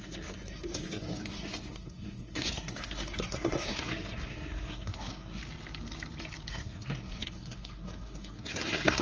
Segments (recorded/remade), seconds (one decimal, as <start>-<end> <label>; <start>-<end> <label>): 0.0-5.4 remade; 5.4-6.5 recorded; 6.5-9.0 remade